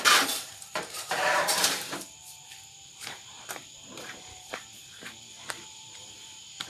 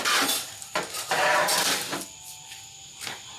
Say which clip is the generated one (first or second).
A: first